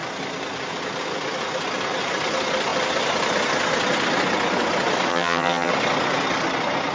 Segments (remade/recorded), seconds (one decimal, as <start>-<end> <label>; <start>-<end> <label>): 0.0-5.1 recorded; 5.1-5.7 remade; 5.7-6.9 recorded

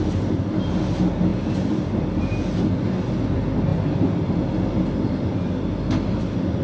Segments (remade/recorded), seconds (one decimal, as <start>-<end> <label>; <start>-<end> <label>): 0.0-6.6 recorded

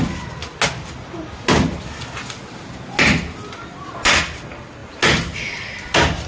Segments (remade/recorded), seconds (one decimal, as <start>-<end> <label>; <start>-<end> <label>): 0.0-6.3 recorded

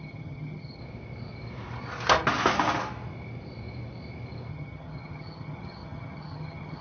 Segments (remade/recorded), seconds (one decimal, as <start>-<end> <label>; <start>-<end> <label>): 0.0-0.8 remade; 0.8-4.5 recorded; 4.5-6.8 remade

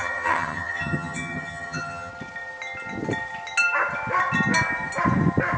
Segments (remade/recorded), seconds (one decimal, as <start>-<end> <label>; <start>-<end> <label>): 0.0-2.1 remade; 2.1-5.6 recorded

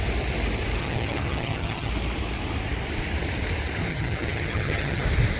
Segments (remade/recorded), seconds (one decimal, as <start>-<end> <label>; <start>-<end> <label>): 0.0-0.8 recorded; 0.8-1.9 remade; 1.9-3.9 recorded; 3.9-5.0 remade; 5.0-5.4 recorded

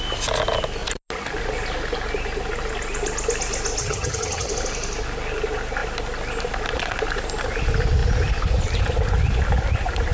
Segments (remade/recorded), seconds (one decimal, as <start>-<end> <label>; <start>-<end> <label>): 0.0-3.8 recorded; 3.8-4.5 remade; 4.5-10.1 recorded

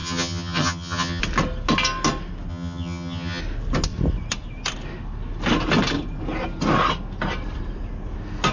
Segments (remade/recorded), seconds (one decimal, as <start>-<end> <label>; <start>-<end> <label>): 0.0-1.2 remade; 1.2-2.5 recorded; 2.5-3.4 remade; 3.4-8.5 recorded